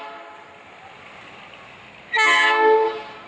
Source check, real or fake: real